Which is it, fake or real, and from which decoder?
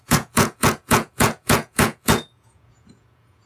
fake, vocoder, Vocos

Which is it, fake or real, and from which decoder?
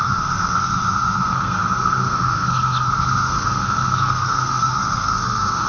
fake, codec, SNAC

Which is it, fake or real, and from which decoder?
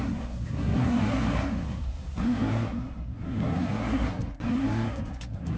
fake, codec, SNAC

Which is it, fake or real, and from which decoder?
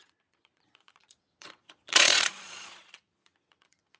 fake, vocoder, Vocos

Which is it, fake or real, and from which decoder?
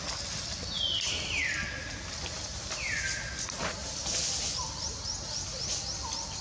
real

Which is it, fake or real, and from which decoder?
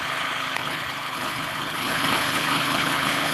fake, codec, HILCodec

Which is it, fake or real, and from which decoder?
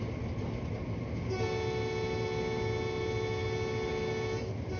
real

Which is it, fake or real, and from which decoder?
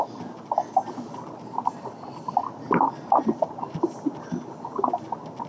real